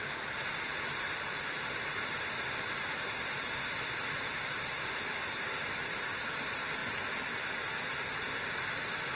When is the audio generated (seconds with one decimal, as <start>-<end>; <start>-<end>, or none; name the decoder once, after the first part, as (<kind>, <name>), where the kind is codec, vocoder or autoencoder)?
none